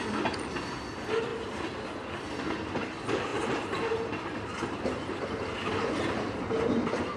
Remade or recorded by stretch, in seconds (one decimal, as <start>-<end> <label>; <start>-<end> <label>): 0.0-7.2 recorded